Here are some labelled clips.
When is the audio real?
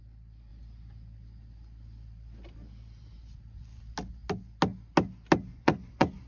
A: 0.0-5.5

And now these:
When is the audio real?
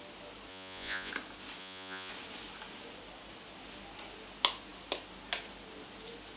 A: 0.0-0.5; 1.1-1.6; 2.1-6.4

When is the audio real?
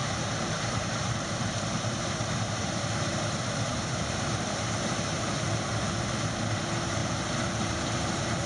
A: 3.1-3.7; 5.5-7.0